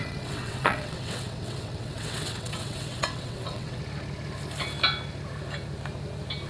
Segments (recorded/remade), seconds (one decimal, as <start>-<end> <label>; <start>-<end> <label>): 0.0-3.8 remade; 3.8-6.5 recorded